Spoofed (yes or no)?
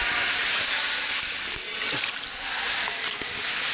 no